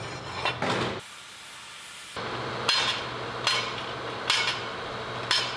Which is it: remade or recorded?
recorded